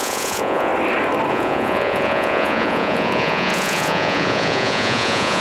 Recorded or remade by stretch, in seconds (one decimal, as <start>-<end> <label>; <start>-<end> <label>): 0.0-0.7 remade; 0.7-1.3 recorded; 1.3-5.4 remade